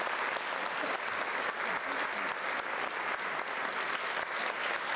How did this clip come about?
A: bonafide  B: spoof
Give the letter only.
A